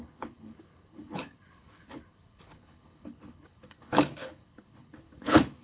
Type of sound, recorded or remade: remade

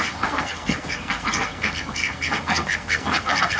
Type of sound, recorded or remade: remade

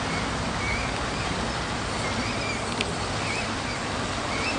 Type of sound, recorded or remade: recorded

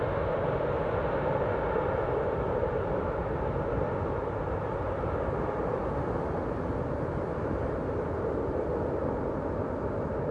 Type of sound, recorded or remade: recorded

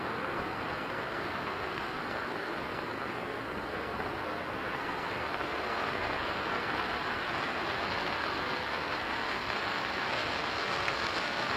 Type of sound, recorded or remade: remade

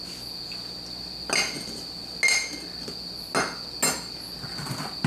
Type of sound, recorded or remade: recorded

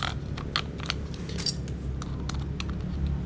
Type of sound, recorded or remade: recorded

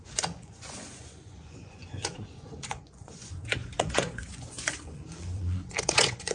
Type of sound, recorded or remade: remade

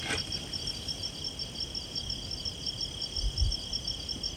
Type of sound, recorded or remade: recorded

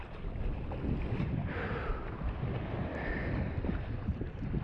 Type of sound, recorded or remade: recorded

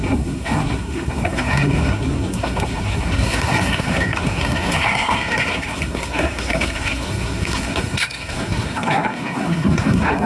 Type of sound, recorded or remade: remade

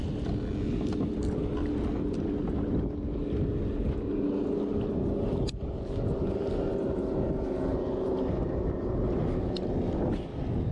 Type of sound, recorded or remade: recorded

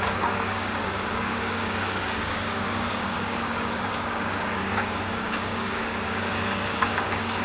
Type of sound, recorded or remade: remade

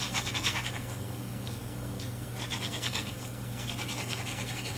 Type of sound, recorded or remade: remade